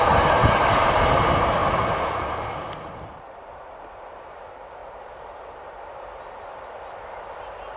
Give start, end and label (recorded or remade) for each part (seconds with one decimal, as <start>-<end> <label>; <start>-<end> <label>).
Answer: 0.0-0.4 recorded; 0.4-1.0 remade; 1.0-4.8 recorded; 4.8-6.2 remade; 6.2-7.8 recorded